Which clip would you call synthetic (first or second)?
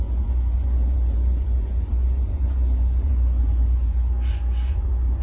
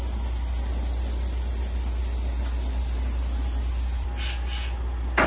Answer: first